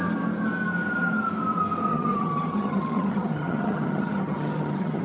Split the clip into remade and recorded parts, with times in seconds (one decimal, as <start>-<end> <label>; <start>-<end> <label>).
0.0-1.9 recorded; 1.9-5.0 remade